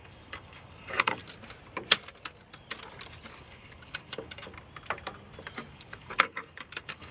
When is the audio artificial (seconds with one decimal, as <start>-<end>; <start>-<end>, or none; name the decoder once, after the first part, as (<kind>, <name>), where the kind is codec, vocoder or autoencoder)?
0.0-1.2 (codec, DAC); 3.4-4.5; 5.7-7.1